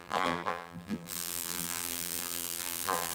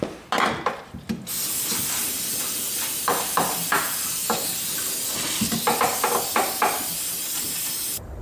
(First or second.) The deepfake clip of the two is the first